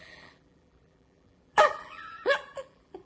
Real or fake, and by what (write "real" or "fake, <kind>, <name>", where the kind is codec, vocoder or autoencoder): fake, vocoder, BigVGAN v2